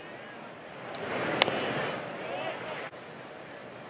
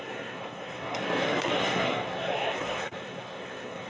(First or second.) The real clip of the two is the first